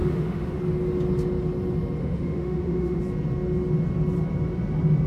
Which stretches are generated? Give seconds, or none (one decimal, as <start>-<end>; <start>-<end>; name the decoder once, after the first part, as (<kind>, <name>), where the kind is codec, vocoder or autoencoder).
0.0-0.6 (autoencoder, DAC-VAE); 2.0-3.0